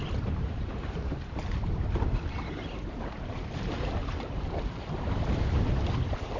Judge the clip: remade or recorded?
remade